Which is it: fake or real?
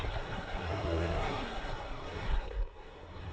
fake